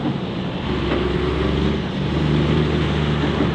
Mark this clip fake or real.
real